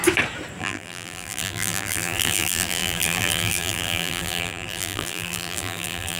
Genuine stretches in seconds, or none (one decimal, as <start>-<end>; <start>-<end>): 0.0-0.6